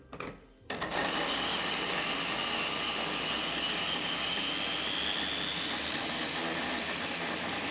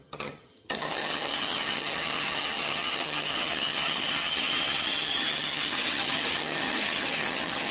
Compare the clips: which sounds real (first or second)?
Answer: first